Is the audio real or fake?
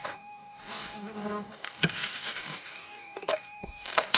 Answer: fake